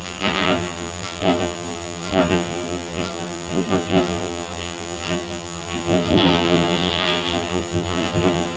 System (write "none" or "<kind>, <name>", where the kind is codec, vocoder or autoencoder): vocoder, BigVGAN v2